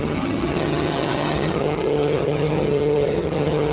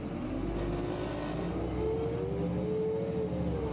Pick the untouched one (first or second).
second